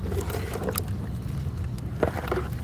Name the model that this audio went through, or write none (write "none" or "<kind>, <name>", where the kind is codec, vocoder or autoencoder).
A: none